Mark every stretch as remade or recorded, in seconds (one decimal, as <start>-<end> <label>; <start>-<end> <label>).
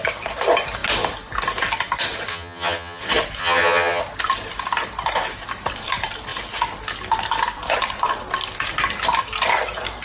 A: 0.0-2.3 recorded; 2.3-3.0 remade; 3.0-3.4 recorded; 3.4-4.0 remade; 4.0-10.0 recorded